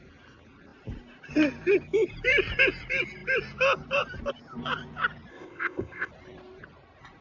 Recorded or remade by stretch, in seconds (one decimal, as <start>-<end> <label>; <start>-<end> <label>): 0.0-5.3 recorded; 5.3-6.1 remade; 6.1-7.2 recorded

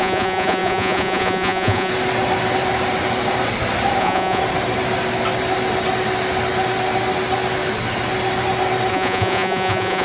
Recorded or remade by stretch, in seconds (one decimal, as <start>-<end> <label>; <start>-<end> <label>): 0.0-1.9 remade; 1.9-4.0 recorded; 4.0-4.4 remade; 4.4-8.9 recorded; 8.9-10.0 remade